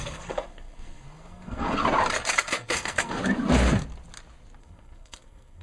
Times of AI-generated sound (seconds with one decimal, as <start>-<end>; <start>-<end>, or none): 0.0-1.8; 2.5-3.2; 4.6-5.6